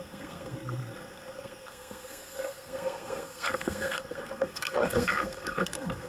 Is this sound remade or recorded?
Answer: remade